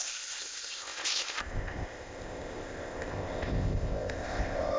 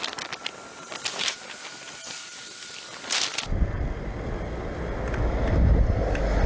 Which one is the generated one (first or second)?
first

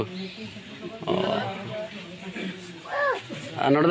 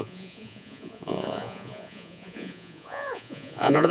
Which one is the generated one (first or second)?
second